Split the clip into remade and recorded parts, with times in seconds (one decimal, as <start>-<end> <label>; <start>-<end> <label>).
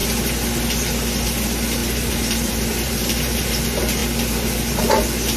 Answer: 0.0-1.8 recorded; 1.8-3.6 remade; 3.6-5.4 recorded